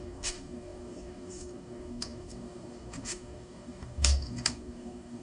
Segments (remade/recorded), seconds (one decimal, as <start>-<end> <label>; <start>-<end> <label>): 0.0-5.2 remade